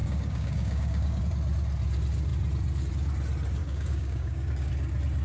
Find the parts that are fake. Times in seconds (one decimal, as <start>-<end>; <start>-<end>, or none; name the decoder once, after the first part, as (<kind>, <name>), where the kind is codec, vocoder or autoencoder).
0.0-1.2 (codec, DAC); 3.6-4.7